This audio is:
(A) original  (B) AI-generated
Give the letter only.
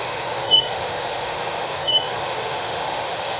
B